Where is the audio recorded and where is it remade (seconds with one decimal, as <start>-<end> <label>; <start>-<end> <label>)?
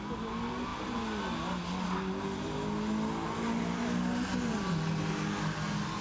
0.0-6.0 recorded